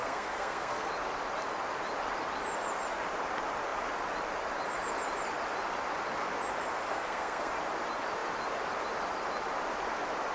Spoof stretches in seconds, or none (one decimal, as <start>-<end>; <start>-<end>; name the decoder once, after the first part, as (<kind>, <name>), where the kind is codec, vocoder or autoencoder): 0.0-0.9 (codec, SNAC); 6.9-7.5